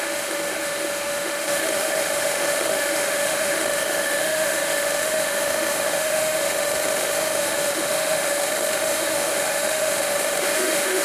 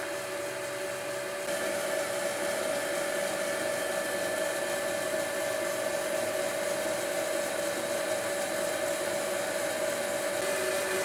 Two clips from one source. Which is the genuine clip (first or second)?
second